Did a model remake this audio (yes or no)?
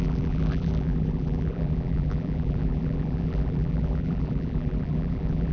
yes